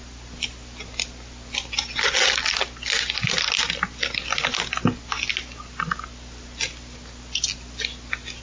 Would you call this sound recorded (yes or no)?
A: yes